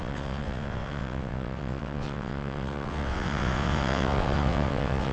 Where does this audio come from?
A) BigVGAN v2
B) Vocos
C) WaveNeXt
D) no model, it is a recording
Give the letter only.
C